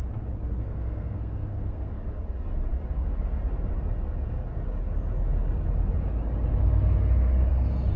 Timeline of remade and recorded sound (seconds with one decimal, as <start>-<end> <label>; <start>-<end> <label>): 0.0-0.5 recorded; 0.5-2.0 remade; 2.0-8.0 recorded